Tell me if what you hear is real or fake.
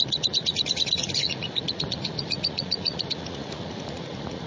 fake